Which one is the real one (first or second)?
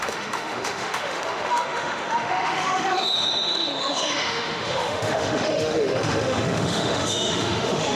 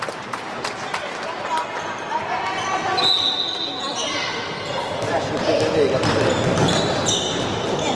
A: second